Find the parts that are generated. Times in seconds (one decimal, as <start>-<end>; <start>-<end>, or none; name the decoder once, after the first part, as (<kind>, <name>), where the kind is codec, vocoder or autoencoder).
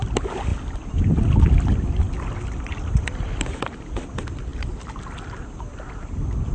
none